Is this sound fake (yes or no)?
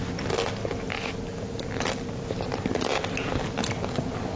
no